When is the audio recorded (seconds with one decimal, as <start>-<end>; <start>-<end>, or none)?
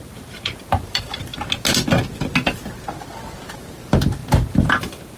1.3-3.5